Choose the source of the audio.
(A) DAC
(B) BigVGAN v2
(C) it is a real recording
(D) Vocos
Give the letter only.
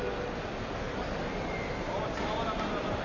C